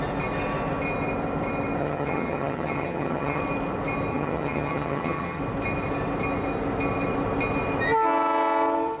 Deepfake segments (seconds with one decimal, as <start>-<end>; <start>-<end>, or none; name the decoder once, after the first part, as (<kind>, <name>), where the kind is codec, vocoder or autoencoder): 1.8-3.4 (vocoder, HiFi-GAN); 4.1-5.4